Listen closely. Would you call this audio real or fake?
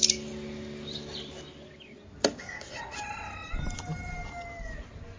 real